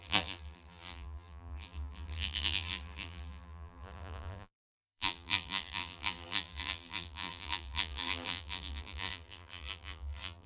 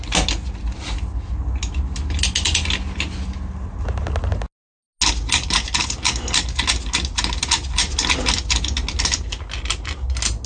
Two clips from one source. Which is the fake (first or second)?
first